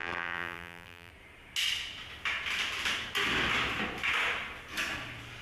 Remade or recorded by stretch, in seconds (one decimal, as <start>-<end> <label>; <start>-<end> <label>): 0.0-1.1 remade; 1.1-5.4 recorded